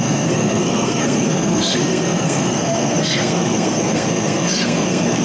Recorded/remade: remade